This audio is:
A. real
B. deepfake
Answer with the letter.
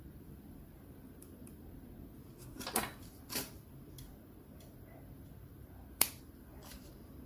B